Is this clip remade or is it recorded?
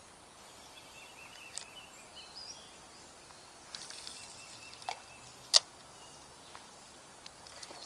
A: recorded